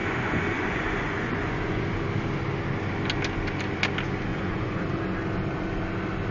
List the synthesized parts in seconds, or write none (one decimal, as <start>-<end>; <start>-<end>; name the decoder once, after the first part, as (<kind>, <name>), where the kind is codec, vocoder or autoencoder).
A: 0.0-1.9 (vocoder, Vocos); 4.3-4.8